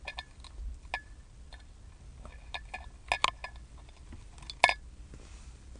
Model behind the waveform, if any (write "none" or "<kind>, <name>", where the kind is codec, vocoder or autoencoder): none